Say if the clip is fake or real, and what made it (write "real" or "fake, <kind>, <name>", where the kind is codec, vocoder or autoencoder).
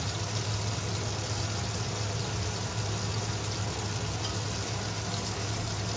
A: real